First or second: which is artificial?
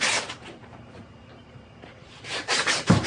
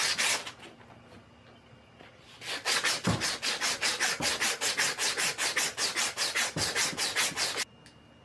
first